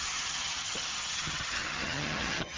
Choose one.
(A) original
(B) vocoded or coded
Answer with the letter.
B